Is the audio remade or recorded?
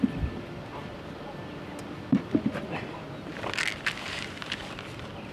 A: recorded